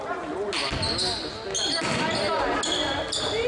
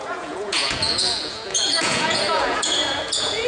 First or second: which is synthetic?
second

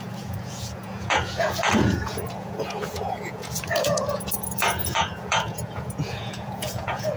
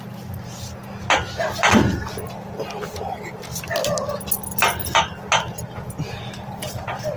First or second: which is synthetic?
first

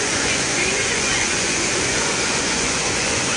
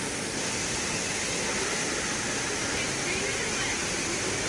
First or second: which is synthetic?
first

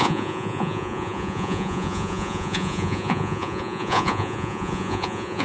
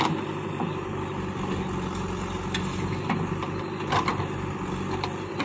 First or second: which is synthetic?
first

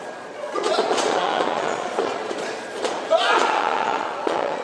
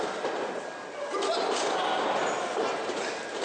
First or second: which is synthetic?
first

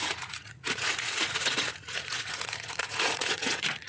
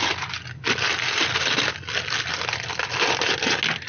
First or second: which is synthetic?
first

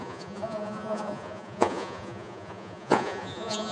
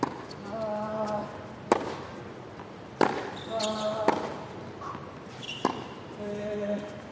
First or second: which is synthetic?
first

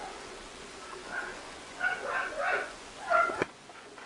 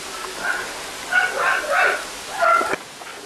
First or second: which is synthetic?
first